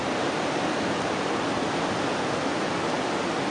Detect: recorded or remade recorded